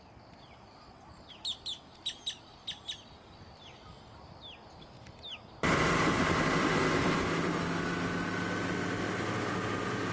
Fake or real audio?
real